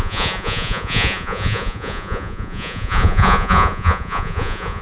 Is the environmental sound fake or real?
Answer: fake